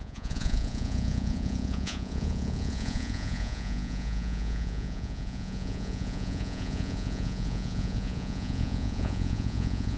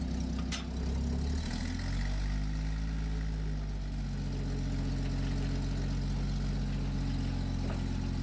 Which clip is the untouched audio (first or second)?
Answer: second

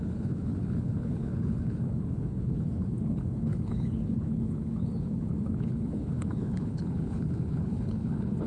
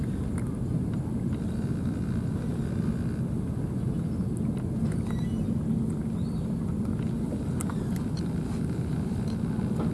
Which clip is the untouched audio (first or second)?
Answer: second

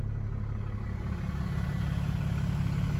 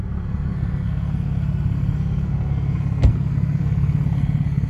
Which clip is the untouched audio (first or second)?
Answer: first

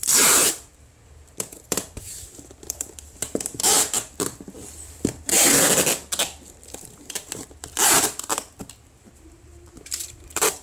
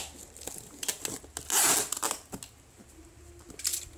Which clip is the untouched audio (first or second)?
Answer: second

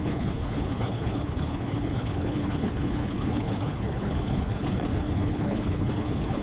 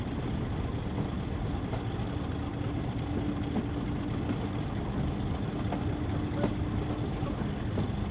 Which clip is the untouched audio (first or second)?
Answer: second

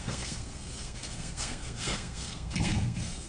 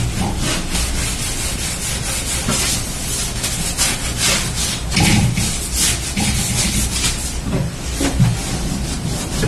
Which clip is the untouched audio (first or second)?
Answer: second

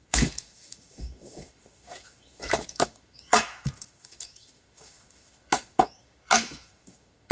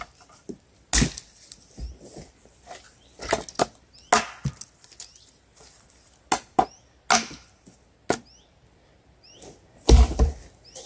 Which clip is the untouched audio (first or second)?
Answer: second